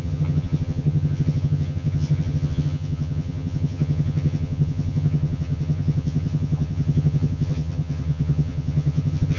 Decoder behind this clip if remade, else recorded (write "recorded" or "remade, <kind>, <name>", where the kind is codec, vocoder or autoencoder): remade, vocoder, HiFi-GAN